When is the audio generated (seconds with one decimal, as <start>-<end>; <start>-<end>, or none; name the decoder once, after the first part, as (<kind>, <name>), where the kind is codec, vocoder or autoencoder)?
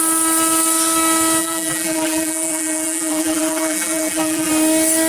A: 1.4-4.5 (vocoder, BigVGAN v2)